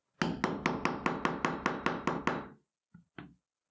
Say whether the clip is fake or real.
real